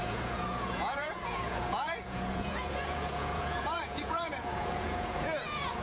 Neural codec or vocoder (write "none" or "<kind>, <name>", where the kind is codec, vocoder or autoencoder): vocoder, Vocos